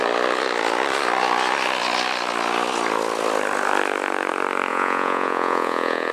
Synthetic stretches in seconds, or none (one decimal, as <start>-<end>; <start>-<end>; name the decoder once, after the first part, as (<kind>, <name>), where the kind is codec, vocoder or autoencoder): 4.7-6.1 (vocoder, Vocos)